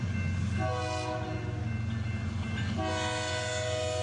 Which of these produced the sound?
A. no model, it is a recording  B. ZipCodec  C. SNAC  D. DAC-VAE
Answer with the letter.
A